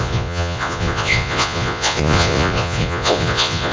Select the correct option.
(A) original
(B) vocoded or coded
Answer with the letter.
B